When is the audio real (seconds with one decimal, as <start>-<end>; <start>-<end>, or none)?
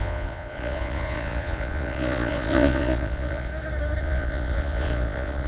3.5-4.0